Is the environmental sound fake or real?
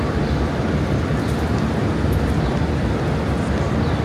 real